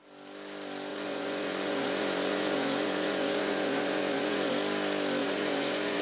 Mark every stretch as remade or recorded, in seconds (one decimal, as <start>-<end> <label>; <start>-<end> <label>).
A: 0.0-0.9 recorded; 0.9-4.5 remade; 4.5-5.2 recorded; 5.2-6.0 remade